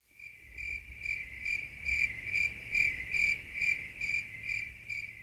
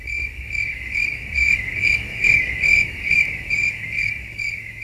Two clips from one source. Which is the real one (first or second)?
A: first